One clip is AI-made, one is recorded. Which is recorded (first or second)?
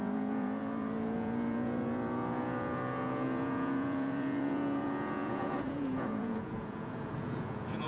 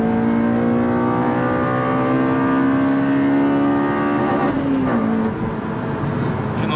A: second